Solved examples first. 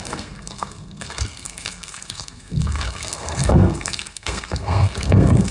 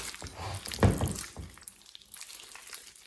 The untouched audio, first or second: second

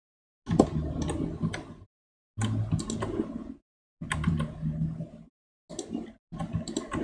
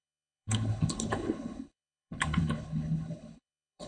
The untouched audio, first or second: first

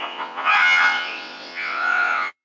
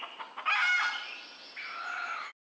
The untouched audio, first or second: second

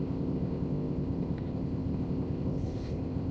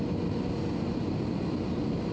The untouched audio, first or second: second